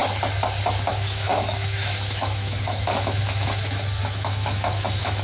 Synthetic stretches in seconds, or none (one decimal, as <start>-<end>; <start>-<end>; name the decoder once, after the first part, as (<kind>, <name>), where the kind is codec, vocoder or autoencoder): 0.9-5.2 (autoencoder, DAC-VAE)

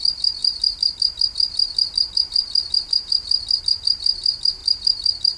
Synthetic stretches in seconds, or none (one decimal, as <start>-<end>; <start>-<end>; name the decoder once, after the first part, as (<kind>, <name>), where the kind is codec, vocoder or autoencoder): 4.6-5.4 (vocoder, BigVGAN v2)

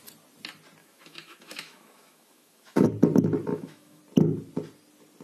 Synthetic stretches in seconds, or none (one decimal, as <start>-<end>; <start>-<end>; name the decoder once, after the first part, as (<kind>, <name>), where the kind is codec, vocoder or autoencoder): 0.8-2.9 (autoencoder, DAC-VAE); 3.5-4.0

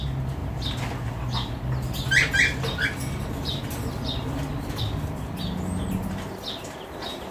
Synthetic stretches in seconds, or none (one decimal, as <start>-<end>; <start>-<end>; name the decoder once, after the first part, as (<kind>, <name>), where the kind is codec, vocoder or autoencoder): none

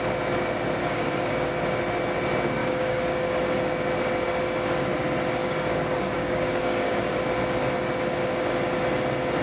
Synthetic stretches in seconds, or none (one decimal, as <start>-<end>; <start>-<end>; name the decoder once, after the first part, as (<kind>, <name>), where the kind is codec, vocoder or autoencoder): 0.8-1.5 (codec, DAC); 2.6-3.3; 5.4-7.2

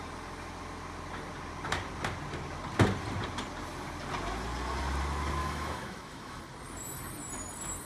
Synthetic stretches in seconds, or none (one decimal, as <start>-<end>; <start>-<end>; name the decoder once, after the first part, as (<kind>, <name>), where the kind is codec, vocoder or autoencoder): 5.4-6.4 (autoencoder, DAC-VAE)

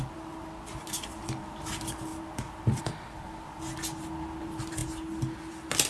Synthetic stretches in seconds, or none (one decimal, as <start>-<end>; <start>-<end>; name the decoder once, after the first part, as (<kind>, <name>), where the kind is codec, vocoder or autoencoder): none